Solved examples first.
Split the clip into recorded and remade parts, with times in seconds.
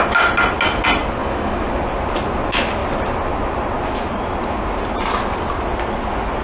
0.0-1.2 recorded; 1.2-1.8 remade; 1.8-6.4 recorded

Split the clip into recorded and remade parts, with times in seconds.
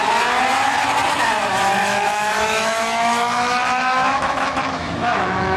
0.0-1.8 recorded; 1.8-5.6 remade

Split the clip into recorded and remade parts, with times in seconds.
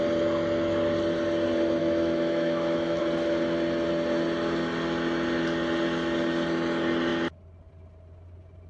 0.0-1.8 recorded; 1.8-3.0 remade; 3.0-8.7 recorded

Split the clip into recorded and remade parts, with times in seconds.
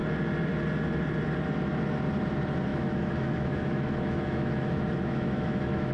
0.0-2.7 recorded; 2.7-5.9 remade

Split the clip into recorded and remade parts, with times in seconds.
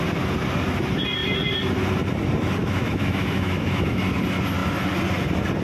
0.0-2.6 recorded; 2.6-4.0 remade; 4.0-5.6 recorded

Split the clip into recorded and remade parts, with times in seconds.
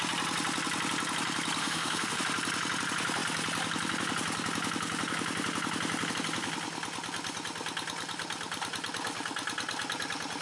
0.0-1.6 recorded; 1.6-2.2 remade; 2.2-10.4 recorded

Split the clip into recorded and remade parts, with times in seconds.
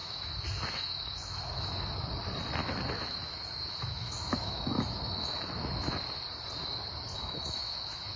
0.0-2.1 remade; 2.1-2.6 recorded; 2.6-5.9 remade; 5.9-7.1 recorded; 7.1-8.2 remade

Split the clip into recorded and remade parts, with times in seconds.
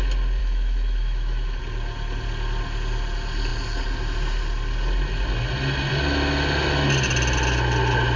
0.0-0.4 recorded; 0.4-1.6 remade; 1.6-8.2 recorded